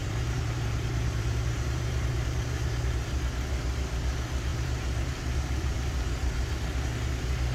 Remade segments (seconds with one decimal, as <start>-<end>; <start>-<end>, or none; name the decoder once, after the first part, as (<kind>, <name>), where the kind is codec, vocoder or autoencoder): 0.0-3.3 (vocoder, BigVGAN v2); 4.5-6.5